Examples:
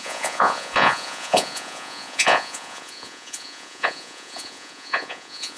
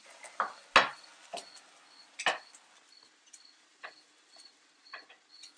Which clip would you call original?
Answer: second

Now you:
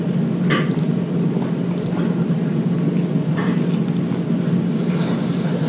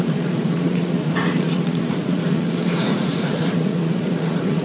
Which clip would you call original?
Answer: first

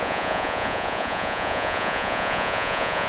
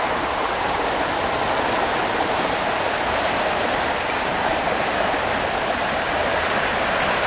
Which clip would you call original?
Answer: second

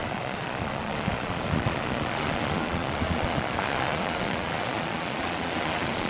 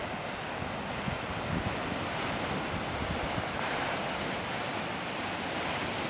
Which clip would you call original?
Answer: second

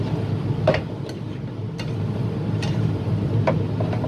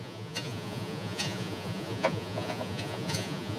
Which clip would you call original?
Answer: first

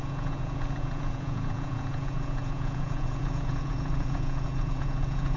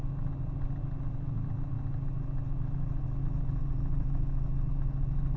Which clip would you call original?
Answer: second